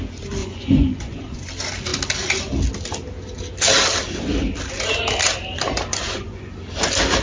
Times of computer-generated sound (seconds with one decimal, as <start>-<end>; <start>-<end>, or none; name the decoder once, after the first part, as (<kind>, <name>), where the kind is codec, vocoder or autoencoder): 0.4-1.4 (vocoder, Vocos); 5.9-6.5

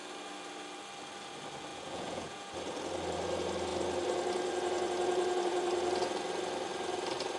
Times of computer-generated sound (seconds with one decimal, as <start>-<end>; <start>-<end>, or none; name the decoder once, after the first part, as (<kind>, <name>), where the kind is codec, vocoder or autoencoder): 1.7-2.5 (vocoder, Vocos)

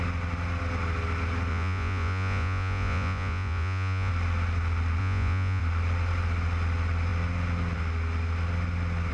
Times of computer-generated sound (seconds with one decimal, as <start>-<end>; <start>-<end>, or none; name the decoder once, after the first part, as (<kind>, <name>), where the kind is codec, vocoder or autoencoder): 1.5-4.1 (vocoder, Vocos); 5.0-5.6

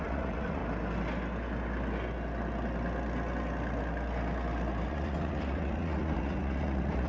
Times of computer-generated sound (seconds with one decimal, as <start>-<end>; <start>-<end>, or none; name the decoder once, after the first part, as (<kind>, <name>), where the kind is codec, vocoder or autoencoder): 0.0-0.6 (vocoder, Vocos); 4.9-7.1

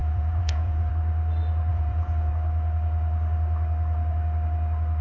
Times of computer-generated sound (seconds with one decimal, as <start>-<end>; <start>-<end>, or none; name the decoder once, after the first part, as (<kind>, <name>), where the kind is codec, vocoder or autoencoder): 0.0-0.9 (vocoder, Vocos); 1.7-2.3